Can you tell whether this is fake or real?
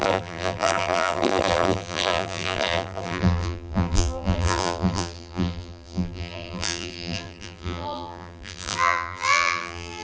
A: fake